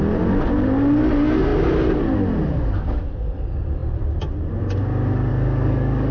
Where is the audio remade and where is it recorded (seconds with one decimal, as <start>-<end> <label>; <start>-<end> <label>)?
0.0-5.3 recorded; 5.3-6.1 remade